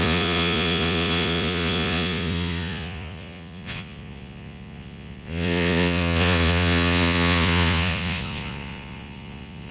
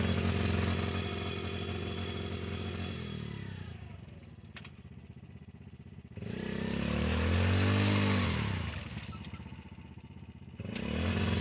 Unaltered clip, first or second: second